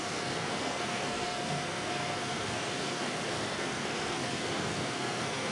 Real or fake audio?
fake